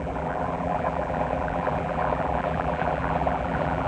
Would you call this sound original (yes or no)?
no